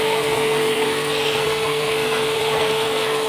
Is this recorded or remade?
remade